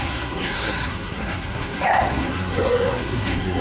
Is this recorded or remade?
remade